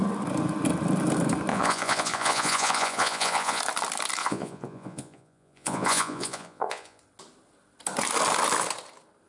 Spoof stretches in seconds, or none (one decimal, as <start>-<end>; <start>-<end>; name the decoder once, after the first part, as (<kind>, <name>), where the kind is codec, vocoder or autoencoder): 1.5-3.6 (vocoder, Vocos); 4.2-7.0